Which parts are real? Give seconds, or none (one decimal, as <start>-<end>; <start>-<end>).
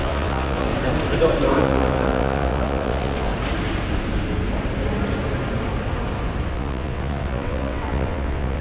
0.7-1.6; 3.3-6.5